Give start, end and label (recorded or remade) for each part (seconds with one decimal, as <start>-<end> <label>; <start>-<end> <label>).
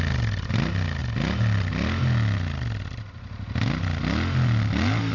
0.0-5.1 recorded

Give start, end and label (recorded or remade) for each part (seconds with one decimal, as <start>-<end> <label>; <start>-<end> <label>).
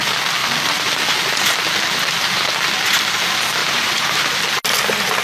0.0-3.6 recorded; 3.6-4.2 remade; 4.2-5.2 recorded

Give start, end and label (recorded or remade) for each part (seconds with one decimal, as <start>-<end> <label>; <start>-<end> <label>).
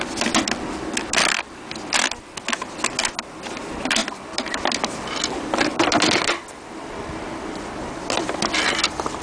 0.0-9.2 recorded